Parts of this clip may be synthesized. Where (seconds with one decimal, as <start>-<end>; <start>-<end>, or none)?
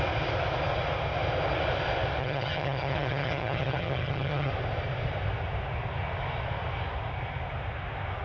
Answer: 2.2-4.5